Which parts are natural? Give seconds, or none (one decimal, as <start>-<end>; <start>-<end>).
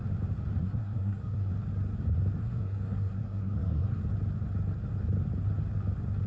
0.0-0.6; 1.5-2.4; 4.0-6.3